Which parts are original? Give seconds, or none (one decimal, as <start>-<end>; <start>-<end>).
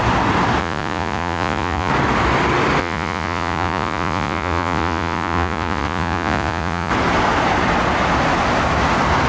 0.0-0.6; 1.9-2.8; 6.9-9.3